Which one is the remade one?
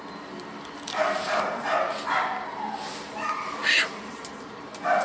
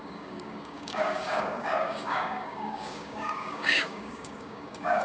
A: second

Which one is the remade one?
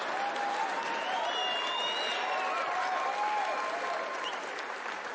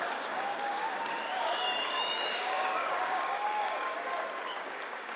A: second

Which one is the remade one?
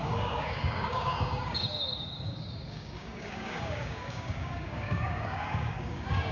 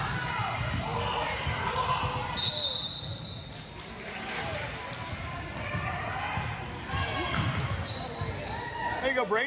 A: first